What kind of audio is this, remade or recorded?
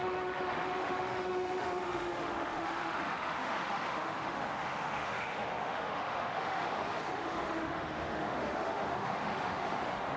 remade